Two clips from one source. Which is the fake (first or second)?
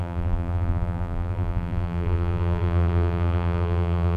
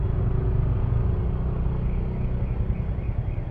first